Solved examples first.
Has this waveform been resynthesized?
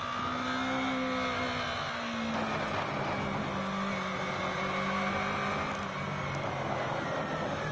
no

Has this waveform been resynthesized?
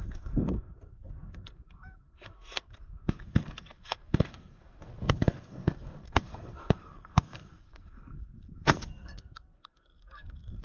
yes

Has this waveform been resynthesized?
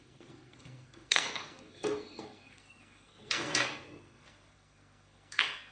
yes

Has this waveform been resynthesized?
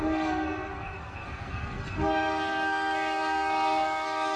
yes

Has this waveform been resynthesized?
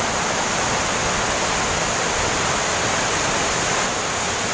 no